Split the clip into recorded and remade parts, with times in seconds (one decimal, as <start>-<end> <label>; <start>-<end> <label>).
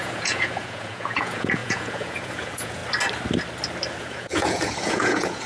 0.0-2.8 remade; 2.8-4.0 recorded; 4.0-5.5 remade